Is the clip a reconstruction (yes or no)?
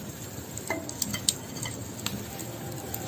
no